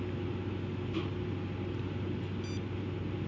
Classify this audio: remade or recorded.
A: recorded